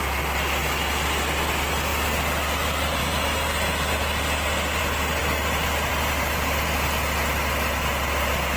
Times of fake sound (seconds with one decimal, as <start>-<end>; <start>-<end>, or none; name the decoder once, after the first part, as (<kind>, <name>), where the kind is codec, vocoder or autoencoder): none